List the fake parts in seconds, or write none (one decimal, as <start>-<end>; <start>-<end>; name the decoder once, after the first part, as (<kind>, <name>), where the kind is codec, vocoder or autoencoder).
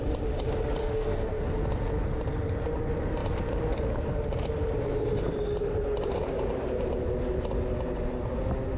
0.8-1.4 (codec, SNAC)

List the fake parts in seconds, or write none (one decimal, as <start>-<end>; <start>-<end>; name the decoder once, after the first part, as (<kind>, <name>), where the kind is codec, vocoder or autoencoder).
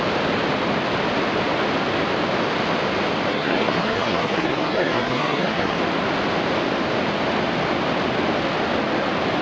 3.3-5.8 (codec, SNAC)